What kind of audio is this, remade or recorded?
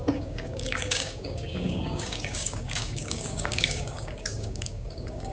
remade